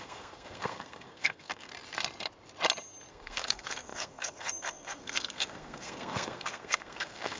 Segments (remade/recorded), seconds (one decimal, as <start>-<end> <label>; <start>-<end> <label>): 0.0-1.7 remade; 1.7-3.1 recorded; 3.1-7.4 remade